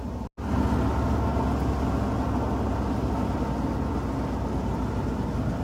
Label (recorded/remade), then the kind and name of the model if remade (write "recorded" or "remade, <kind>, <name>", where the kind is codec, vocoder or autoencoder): recorded